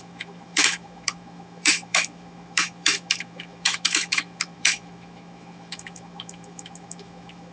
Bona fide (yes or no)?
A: no